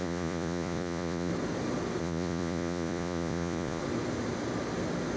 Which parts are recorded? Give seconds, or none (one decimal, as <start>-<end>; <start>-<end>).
1.3-2.0; 3.8-5.2